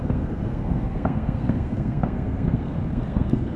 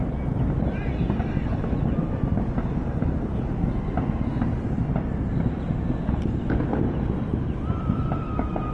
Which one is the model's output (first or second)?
first